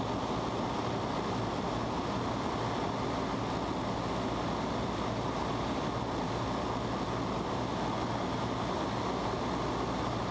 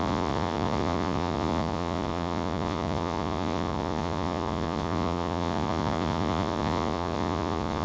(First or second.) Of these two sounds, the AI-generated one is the second